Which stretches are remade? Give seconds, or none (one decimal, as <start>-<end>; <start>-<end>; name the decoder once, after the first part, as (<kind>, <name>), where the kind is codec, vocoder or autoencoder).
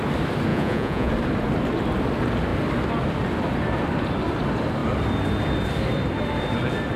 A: 0.5-1.1 (vocoder, Vocos)